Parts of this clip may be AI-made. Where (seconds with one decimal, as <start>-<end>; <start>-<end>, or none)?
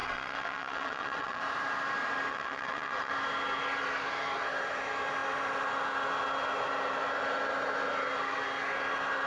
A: 0.0-1.4; 2.3-3.1